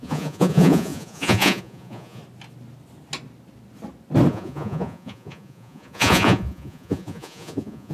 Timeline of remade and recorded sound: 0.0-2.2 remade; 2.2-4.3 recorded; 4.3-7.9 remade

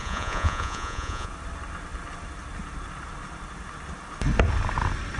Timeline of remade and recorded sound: 0.0-1.3 remade; 1.3-5.2 recorded